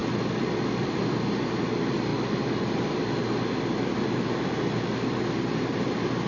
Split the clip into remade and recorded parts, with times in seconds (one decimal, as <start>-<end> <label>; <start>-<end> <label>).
0.0-6.3 recorded